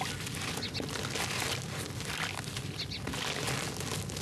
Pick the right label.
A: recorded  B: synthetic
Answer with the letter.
A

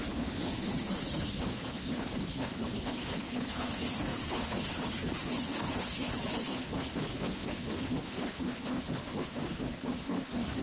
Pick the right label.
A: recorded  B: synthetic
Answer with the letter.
B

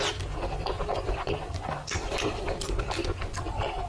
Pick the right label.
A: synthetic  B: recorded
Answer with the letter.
A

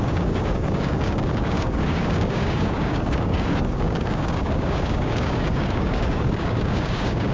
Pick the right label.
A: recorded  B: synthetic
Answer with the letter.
B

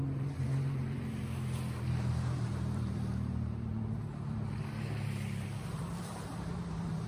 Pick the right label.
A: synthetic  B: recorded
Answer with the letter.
A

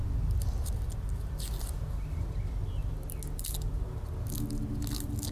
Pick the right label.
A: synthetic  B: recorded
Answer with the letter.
B